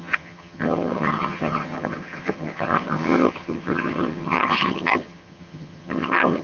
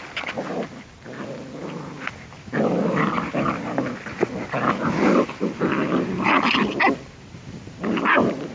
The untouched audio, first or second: second